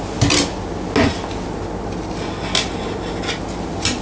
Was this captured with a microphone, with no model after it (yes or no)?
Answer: yes